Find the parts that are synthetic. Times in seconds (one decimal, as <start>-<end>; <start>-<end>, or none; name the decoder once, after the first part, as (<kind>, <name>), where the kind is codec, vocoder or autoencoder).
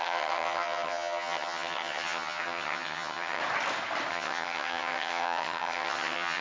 0.0-3.4 (vocoder, HiFi-GAN); 4.1-6.4